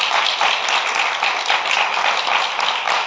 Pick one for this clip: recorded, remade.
recorded